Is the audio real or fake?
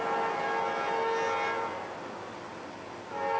real